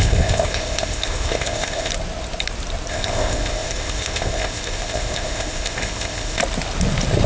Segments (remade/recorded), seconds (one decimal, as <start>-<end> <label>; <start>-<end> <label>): 0.0-1.9 remade; 1.9-2.9 recorded; 2.9-6.4 remade; 6.4-7.3 recorded